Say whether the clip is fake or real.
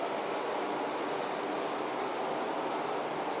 real